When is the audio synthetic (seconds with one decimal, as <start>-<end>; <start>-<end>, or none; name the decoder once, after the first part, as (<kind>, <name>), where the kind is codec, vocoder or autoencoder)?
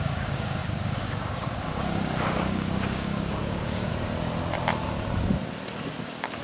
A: 0.0-3.9 (codec, DAC); 6.0-6.4